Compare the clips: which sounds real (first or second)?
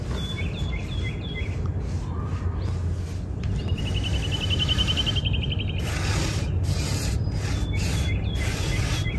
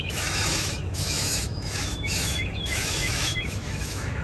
first